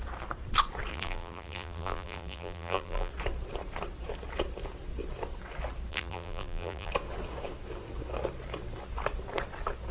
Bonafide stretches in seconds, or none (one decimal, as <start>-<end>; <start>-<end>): 0.0-0.9; 3.1-5.9; 6.9-9.9